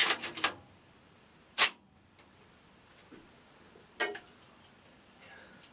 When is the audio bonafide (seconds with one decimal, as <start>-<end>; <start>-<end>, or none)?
0.0-4.0; 5.2-5.7